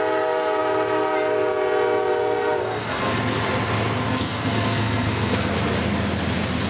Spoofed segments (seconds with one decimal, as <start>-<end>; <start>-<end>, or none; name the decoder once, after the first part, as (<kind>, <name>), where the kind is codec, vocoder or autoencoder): 2.6-3.1 (codec, SNAC); 4.1-5.5

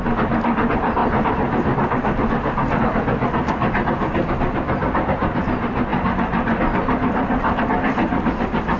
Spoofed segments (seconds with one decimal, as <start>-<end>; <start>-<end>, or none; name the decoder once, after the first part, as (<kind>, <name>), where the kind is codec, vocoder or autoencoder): none

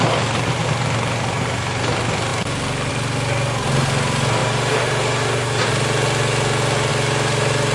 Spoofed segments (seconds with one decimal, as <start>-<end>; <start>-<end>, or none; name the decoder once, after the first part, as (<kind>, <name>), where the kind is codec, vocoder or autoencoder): none

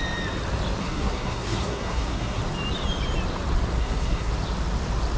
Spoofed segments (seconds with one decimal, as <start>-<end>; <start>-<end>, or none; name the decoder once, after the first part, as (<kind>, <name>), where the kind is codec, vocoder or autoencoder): 0.8-2.4 (codec, SNAC); 3.8-4.3

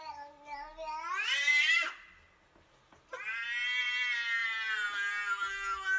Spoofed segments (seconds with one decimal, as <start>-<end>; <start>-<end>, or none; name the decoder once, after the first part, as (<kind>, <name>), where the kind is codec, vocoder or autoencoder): none